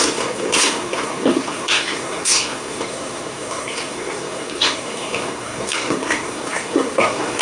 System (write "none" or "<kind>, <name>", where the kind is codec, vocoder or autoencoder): codec, SNAC